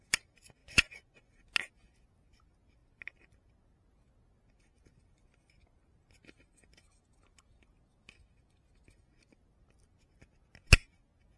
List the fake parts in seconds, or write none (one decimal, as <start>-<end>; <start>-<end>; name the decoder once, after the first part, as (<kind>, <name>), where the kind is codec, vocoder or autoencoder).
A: 0.6-1.3 (vocoder, Vocos)